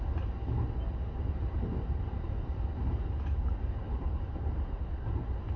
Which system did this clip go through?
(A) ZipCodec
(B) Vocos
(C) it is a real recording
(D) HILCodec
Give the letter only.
C